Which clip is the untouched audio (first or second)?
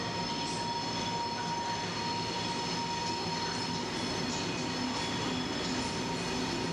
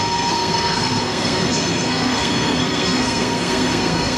first